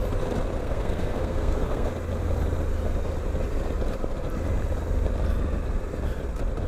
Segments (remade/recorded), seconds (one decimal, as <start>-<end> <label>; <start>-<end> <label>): 0.0-0.6 recorded; 0.6-1.9 remade; 1.9-6.7 recorded